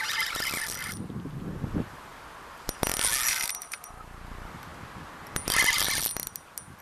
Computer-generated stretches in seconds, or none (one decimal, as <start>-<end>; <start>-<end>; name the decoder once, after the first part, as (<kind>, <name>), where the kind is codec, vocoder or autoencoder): 0.0-2.1 (vocoder, BigVGAN v2); 3.3-4.7